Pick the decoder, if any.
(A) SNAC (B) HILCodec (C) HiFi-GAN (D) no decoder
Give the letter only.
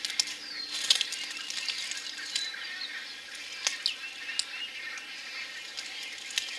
D